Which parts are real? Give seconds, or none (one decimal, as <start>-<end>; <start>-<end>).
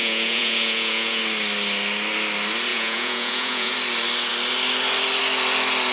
1.2-2.7; 3.7-5.9